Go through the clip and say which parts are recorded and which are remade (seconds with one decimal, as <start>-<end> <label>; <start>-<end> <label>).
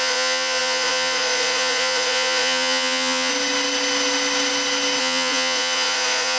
0.0-3.3 remade; 3.3-5.0 recorded; 5.0-6.4 remade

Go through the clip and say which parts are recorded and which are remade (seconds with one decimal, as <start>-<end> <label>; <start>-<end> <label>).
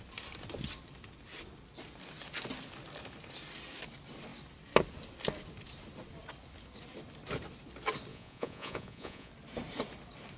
0.0-8.1 recorded; 8.1-9.3 remade; 9.3-10.4 recorded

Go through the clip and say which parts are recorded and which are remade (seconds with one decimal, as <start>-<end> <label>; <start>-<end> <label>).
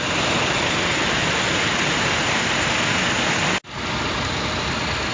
0.0-5.1 recorded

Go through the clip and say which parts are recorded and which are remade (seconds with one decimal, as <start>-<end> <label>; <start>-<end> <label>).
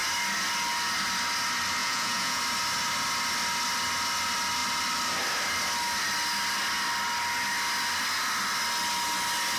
0.0-1.8 recorded; 1.8-2.4 remade; 2.4-9.6 recorded